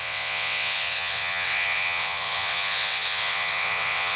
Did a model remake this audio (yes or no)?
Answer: yes